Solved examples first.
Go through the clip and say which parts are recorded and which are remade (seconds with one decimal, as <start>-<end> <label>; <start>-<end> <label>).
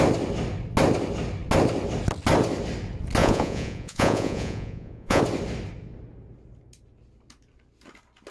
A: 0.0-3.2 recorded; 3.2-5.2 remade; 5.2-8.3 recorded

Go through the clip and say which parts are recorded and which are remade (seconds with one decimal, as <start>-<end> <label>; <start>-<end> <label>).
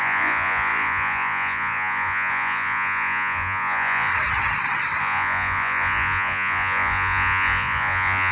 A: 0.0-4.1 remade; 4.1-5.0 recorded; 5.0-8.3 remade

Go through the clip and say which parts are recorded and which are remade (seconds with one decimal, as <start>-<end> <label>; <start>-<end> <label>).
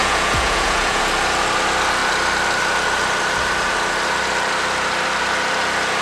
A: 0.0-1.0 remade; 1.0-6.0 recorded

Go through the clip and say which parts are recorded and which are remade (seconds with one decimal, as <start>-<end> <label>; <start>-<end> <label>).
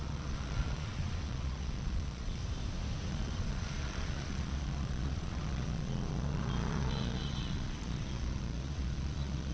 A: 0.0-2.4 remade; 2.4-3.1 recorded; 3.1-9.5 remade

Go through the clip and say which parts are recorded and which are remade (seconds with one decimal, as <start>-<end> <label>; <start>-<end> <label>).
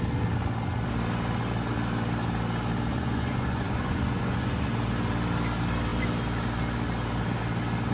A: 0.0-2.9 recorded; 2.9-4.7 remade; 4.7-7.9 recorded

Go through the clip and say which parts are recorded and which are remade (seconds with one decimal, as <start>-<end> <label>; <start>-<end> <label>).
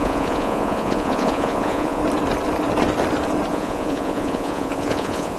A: 0.0-2.0 remade; 2.0-3.5 recorded; 3.5-5.4 remade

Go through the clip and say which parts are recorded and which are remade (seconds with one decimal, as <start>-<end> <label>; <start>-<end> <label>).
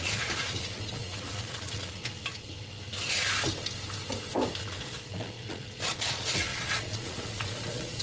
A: 0.0-2.0 remade; 2.0-4.6 recorded; 4.6-8.0 remade